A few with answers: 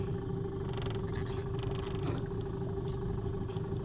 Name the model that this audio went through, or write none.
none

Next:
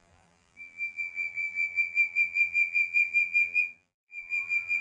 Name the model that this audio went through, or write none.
vocoder, BigVGAN v2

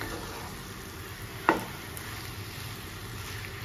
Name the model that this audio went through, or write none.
none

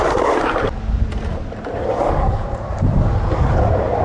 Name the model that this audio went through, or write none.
vocoder, BigVGAN v2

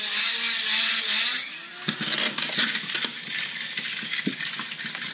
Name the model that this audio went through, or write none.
none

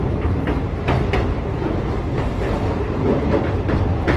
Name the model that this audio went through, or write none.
none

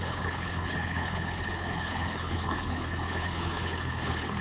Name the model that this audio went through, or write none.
codec, HILCodec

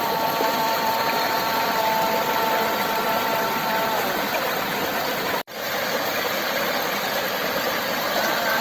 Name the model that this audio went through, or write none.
vocoder, BigVGAN v2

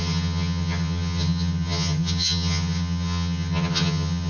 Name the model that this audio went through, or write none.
vocoder, HiFi-GAN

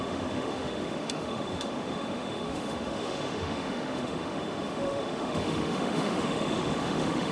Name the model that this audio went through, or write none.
autoencoder, DAC-VAE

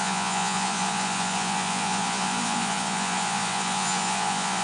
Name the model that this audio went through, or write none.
vocoder, Vocos